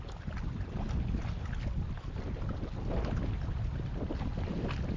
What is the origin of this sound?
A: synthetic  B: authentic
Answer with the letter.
B